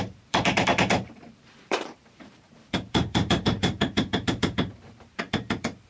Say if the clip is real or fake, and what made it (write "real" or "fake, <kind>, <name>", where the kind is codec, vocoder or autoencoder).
fake, vocoder, BigVGAN v2